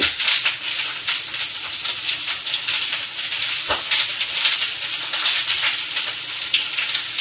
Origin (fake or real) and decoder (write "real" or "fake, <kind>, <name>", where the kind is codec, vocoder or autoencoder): real